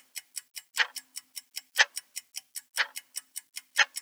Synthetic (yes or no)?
no